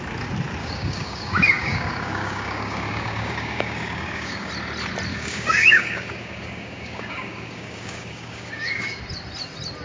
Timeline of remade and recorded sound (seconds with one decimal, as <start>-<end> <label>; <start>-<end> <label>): 0.0-0.6 recorded; 0.6-4.5 remade; 4.5-5.1 recorded; 5.1-9.0 remade; 9.0-9.8 recorded